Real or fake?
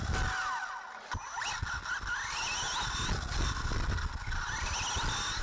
real